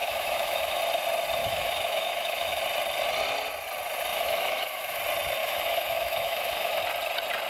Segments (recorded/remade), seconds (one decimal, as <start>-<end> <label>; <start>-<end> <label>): 0.0-0.8 remade; 0.8-1.4 recorded; 1.4-2.6 remade; 2.6-4.1 recorded; 4.1-5.0 remade; 5.0-5.4 recorded; 5.4-6.8 remade; 6.8-7.5 recorded